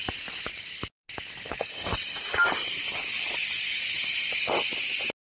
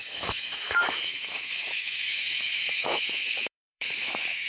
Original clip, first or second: first